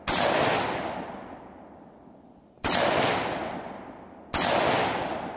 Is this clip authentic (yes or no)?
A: yes